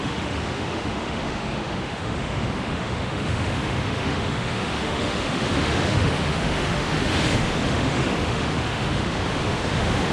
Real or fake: fake